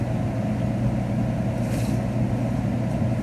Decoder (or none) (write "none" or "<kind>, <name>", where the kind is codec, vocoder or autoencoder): none